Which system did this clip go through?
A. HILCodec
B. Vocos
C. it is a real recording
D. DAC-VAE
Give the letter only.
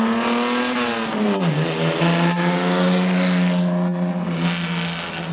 C